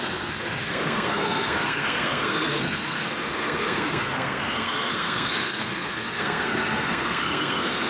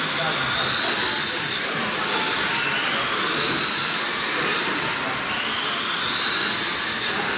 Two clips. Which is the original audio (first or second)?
second